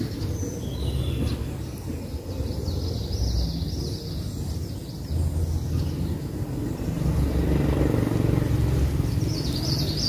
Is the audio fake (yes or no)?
no